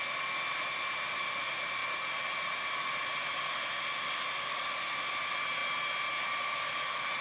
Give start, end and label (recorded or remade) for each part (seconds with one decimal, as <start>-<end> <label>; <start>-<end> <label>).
0.0-5.6 remade; 5.6-6.3 recorded; 6.3-7.2 remade